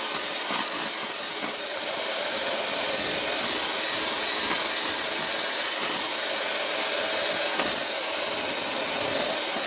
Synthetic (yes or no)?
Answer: no